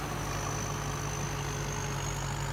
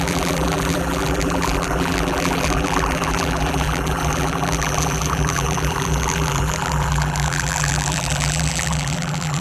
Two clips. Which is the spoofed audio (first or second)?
second